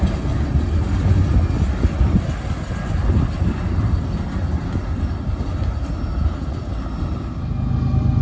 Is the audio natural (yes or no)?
yes